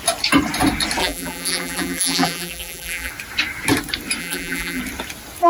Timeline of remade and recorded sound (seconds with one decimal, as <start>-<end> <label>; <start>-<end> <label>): 0.0-1.0 recorded; 1.0-3.1 remade; 3.1-4.2 recorded; 4.2-4.8 remade; 4.8-5.5 recorded